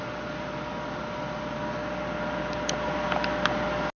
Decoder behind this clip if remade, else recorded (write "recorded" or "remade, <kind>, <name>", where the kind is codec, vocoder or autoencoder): recorded